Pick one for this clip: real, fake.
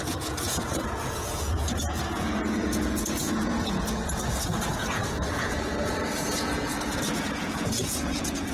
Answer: fake